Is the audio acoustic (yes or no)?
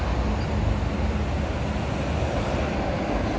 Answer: yes